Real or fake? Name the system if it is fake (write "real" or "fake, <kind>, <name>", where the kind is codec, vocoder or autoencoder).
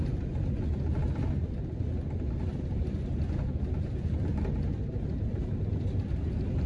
real